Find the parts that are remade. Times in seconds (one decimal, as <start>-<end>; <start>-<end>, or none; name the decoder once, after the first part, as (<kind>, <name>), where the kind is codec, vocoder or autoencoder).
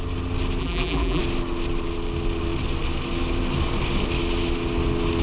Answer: 0.6-1.2 (vocoder, BigVGAN v2)